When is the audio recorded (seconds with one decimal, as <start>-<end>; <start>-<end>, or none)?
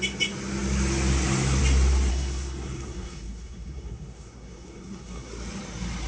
0.0-2.1; 5.3-6.1